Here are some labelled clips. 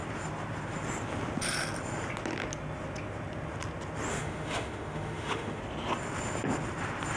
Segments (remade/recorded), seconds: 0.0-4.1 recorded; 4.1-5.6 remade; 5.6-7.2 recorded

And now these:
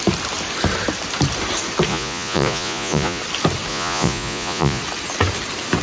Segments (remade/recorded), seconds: 0.0-1.9 recorded; 1.9-3.2 remade; 3.2-3.7 recorded; 3.7-4.8 remade; 4.8-5.8 recorded

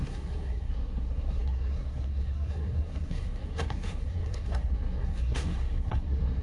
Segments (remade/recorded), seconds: 0.0-6.4 remade

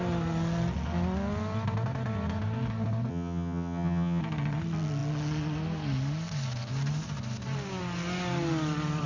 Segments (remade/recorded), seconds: 0.0-3.1 recorded; 3.1-4.2 remade; 4.2-9.1 recorded

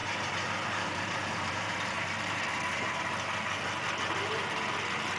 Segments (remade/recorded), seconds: 0.0-3.1 remade; 3.1-5.2 recorded

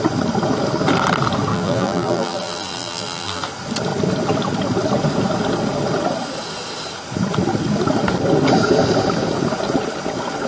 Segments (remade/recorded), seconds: 0.0-1.5 recorded; 1.5-3.4 remade; 3.4-10.5 recorded

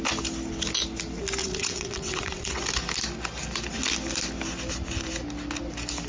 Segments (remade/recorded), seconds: 0.0-1.4 recorded; 1.4-2.6 remade; 2.6-6.1 recorded